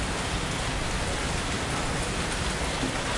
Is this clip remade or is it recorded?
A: recorded